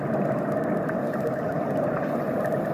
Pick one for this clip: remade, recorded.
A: recorded